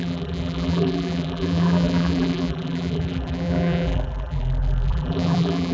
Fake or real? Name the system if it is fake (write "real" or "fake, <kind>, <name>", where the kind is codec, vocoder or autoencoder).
fake, vocoder, BigVGAN v2